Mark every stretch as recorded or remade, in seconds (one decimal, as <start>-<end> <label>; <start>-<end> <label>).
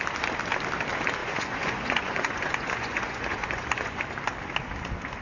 0.0-1.2 recorded; 1.2-4.0 remade; 4.0-5.2 recorded